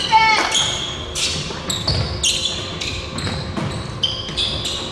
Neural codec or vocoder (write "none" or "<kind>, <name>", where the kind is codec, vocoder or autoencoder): none